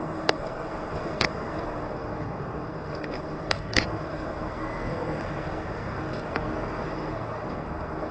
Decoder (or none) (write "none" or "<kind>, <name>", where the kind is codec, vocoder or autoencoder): codec, SNAC